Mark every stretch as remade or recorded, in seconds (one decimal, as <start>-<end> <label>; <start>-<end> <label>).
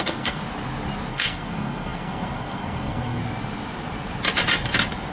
0.0-0.4 remade; 0.4-1.1 recorded; 1.1-3.2 remade; 3.2-5.1 recorded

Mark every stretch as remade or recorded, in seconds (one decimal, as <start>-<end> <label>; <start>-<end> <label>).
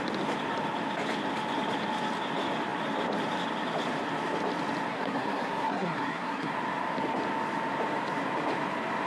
0.0-4.9 recorded; 4.9-6.5 remade; 6.5-9.1 recorded